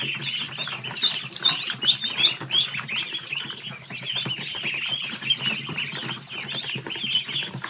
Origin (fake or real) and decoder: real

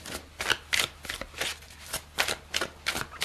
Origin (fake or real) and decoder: real